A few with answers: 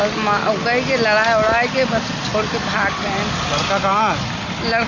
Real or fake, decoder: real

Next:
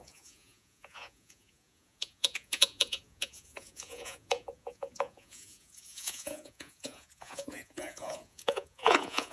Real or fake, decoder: fake, vocoder, Vocos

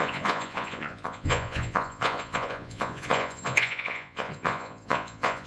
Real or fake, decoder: fake, vocoder, Vocos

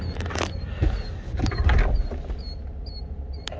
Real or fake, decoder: real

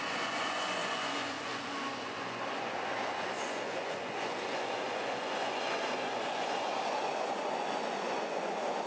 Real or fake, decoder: fake, vocoder, Vocos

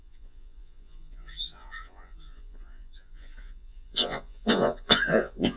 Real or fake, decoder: fake, vocoder, Vocos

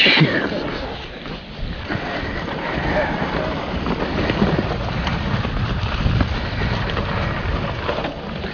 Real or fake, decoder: real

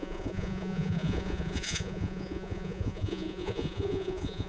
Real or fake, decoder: fake, vocoder, Vocos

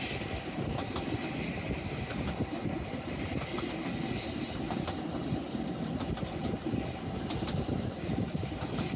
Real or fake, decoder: real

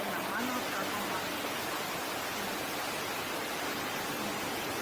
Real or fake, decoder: real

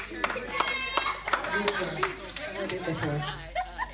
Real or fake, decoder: real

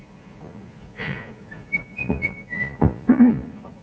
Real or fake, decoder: fake, vocoder, Vocos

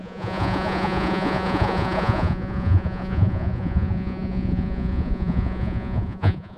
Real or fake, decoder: fake, vocoder, Vocos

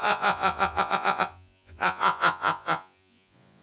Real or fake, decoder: fake, vocoder, Vocos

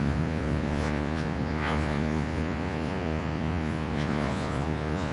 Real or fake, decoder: fake, vocoder, Vocos